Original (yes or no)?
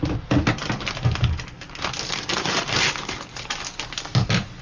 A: yes